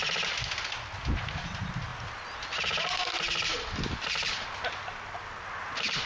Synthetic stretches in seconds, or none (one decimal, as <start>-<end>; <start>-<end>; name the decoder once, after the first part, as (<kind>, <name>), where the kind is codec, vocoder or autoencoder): none